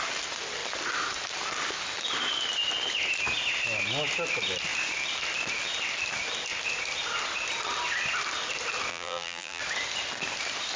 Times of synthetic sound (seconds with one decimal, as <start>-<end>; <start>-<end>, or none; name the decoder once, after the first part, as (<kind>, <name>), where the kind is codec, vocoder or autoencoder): 8.9-9.6 (vocoder, BigVGAN v2)